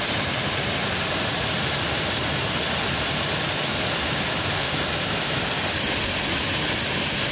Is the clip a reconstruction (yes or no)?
no